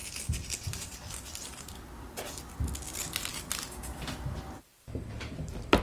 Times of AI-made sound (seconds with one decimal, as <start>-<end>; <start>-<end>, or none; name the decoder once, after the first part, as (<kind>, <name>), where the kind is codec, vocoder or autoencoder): 0.0-2.4 (vocoder, BigVGAN v2); 4.7-5.8